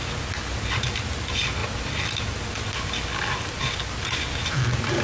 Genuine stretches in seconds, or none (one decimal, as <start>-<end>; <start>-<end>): 0.0-5.0